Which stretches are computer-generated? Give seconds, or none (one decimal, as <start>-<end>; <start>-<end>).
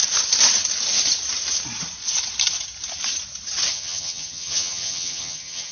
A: 3.7-5.7